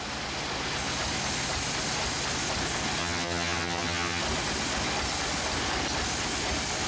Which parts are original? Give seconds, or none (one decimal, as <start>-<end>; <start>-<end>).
0.0-3.0; 4.2-6.9